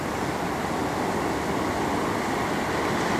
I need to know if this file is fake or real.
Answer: real